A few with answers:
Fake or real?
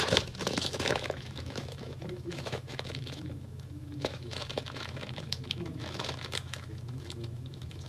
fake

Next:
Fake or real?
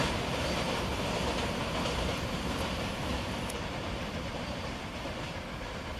fake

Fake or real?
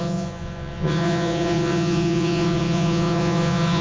fake